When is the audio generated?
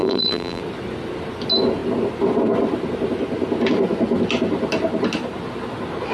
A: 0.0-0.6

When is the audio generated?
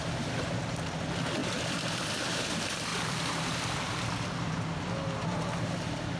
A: 0.0-0.5; 1.4-2.1; 2.9-4.5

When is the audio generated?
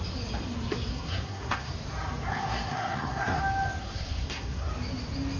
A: 0.9-1.7; 2.3-3.4; 3.8-4.7